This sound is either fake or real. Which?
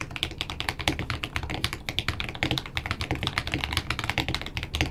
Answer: real